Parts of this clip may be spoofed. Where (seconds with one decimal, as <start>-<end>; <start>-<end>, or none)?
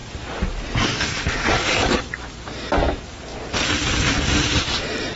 3.3-4.6